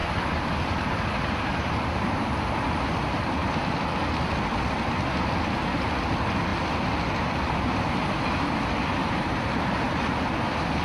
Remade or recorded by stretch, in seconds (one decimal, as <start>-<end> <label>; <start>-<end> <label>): 0.0-2.1 remade; 2.1-9.0 recorded; 9.0-9.9 remade; 9.9-10.8 recorded